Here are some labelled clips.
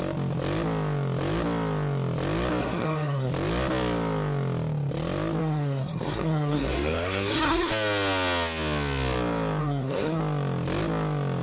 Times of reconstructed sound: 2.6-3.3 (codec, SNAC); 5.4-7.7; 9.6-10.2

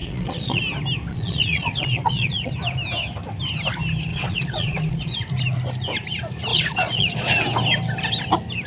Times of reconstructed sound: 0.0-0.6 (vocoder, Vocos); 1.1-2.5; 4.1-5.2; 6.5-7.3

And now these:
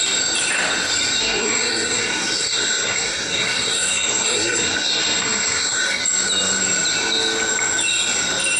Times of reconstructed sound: 1.2-6.0 (codec, SNAC)

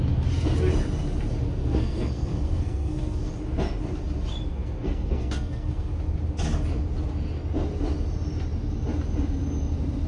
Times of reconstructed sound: 1.6-3.3 (codec, SNAC); 4.5-5.9

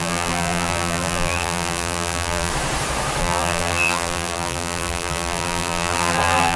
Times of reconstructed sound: 0.0-2.5 (vocoder, BigVGAN v2); 3.2-6.6

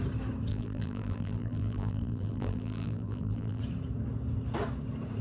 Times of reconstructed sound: 0.5-3.6 (vocoder, BigVGAN v2)

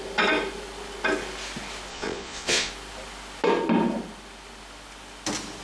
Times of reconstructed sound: 1.9-2.7 (vocoder, Vocos)